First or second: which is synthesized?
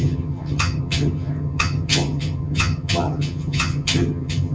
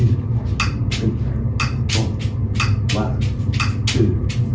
first